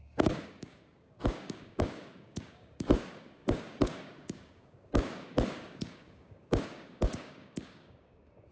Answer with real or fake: fake